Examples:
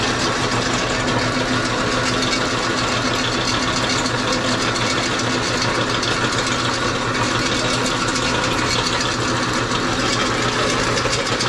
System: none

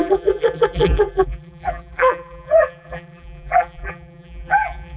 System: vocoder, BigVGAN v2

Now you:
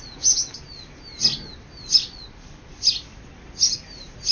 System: none